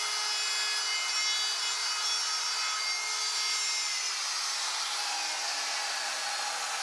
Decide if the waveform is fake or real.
real